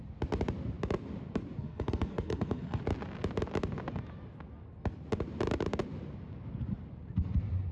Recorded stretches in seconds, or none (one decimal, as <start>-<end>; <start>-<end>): 0.0-1.6; 2.8-7.7